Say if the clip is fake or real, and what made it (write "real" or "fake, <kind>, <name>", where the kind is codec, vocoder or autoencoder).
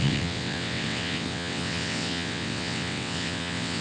fake, vocoder, WaveNeXt